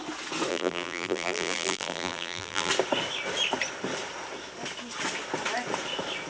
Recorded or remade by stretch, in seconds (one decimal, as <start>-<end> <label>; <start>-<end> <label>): 0.0-0.5 recorded; 0.5-2.7 remade; 2.7-6.3 recorded